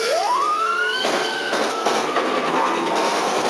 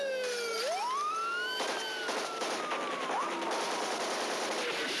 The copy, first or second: first